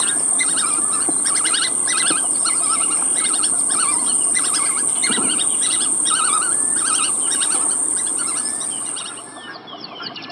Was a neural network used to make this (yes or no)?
no